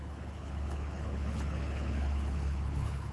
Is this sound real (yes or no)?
no